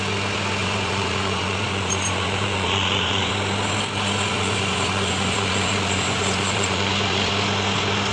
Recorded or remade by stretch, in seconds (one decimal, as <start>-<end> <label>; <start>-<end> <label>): 0.0-0.6 recorded; 0.6-3.3 remade; 3.3-4.3 recorded; 4.3-7.3 remade; 7.3-8.1 recorded